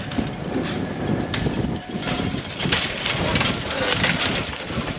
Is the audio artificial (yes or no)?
no